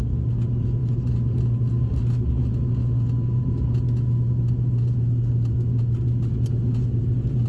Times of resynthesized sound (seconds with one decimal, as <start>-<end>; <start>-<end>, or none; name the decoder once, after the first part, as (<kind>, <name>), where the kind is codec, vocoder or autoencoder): none

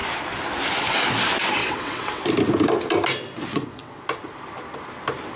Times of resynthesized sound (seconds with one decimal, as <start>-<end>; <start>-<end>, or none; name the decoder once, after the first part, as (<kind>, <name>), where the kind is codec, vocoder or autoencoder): 1.6-2.2 (vocoder, WaveNeXt); 3.5-4.0